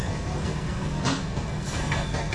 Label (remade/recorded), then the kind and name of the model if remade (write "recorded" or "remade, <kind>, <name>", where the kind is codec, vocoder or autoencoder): remade, codec, SNAC